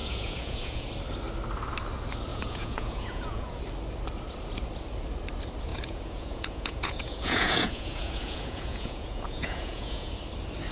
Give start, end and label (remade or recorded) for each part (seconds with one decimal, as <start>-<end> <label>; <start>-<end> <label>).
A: 0.0-0.9 remade; 0.9-2.3 recorded; 2.3-3.6 remade; 3.6-5.7 recorded; 5.7-10.1 remade; 10.1-10.7 recorded